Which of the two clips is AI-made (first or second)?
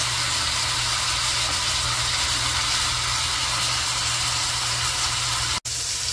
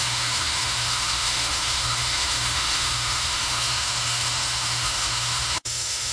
second